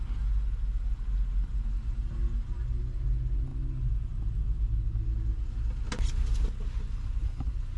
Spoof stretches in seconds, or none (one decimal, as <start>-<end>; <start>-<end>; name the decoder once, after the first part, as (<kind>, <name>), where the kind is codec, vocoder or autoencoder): none